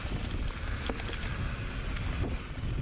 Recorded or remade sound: recorded